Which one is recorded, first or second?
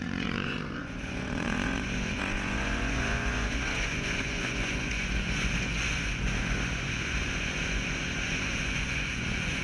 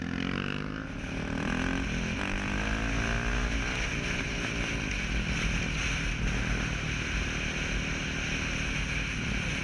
second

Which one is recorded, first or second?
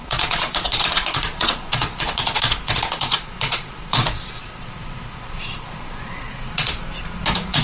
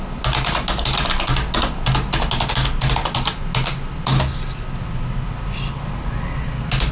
second